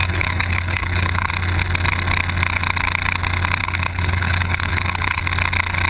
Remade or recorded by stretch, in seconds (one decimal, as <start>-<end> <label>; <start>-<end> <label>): 0.0-1.3 remade; 1.3-3.6 recorded; 3.6-5.2 remade; 5.2-5.9 recorded